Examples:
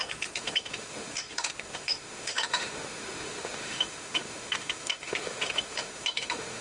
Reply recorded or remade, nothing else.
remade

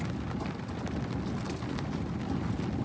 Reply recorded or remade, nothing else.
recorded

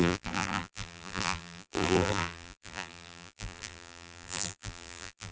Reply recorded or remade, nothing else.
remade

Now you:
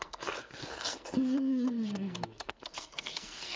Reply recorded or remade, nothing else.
remade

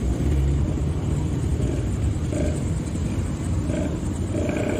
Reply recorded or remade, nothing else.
remade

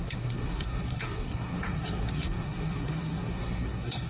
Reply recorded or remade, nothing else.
remade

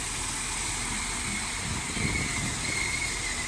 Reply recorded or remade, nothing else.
recorded